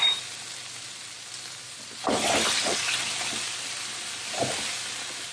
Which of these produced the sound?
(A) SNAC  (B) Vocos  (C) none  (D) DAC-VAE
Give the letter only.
C